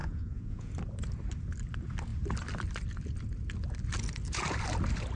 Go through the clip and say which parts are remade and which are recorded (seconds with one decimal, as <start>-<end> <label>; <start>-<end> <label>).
0.0-0.7 remade; 0.7-5.2 recorded